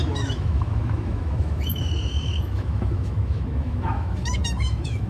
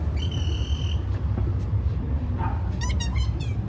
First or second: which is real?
second